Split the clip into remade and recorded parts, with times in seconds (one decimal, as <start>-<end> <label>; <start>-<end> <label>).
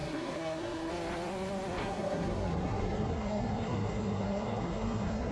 0.0-0.9 remade; 0.9-1.8 recorded; 1.8-5.3 remade